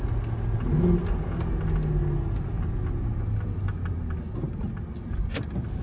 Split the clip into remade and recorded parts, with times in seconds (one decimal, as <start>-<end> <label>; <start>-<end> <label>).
0.0-5.8 recorded